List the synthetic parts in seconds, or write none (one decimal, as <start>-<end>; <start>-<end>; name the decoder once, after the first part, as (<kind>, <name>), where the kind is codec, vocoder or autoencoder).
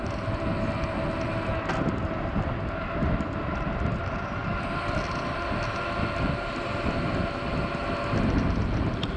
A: none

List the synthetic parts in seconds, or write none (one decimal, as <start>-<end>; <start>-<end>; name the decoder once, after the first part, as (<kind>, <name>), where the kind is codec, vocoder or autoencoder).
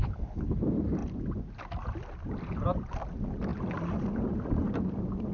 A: 0.0-0.6 (codec, HILCodec)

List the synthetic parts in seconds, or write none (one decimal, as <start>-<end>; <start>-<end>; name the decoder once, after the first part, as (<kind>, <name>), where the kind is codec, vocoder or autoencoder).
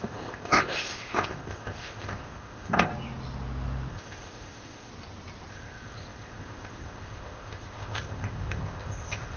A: 0.0-2.9 (codec, ZipCodec); 3.9-4.9; 5.5-9.4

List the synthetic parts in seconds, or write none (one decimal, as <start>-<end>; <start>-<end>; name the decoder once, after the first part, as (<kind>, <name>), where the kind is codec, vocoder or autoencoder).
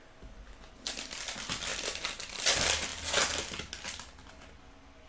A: none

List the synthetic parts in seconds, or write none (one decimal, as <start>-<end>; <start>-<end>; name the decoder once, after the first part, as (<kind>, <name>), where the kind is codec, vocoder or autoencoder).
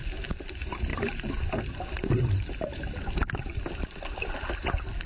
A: 0.0-5.1 (vocoder, BigVGAN v2)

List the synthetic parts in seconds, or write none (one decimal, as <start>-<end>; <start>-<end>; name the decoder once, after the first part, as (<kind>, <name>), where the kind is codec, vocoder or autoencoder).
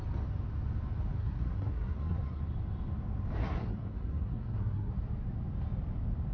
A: 1.2-2.4 (codec, SNAC); 3.4-4.9